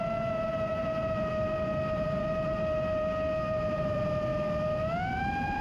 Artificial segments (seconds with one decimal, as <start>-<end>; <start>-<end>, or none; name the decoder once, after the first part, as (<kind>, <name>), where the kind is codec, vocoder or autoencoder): 0.0-4.3 (vocoder, BigVGAN v2); 5.1-5.6